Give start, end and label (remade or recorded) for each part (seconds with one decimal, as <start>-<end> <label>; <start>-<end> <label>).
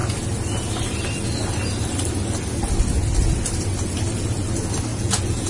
0.0-4.9 recorded; 4.9-5.5 remade